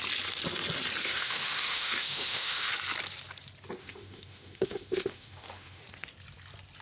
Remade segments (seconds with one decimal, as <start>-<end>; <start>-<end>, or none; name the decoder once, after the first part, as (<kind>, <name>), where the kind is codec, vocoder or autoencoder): 1.0-2.7 (autoencoder, DAC-VAE); 3.8-5.8